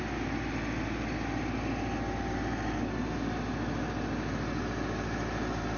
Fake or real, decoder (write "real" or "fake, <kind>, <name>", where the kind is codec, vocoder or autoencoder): real